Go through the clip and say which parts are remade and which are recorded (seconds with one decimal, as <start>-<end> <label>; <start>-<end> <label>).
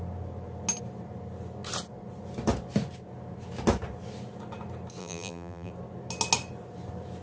0.0-5.0 recorded; 5.0-5.7 remade; 5.7-7.2 recorded